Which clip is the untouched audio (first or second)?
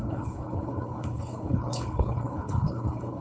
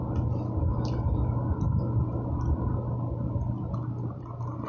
second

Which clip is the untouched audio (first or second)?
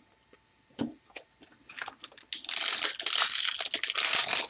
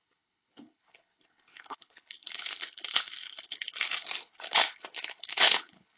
first